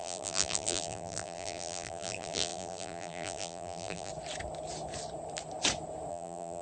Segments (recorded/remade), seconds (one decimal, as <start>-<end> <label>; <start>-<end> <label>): 0.0-4.1 remade; 4.1-6.1 recorded; 6.1-6.6 remade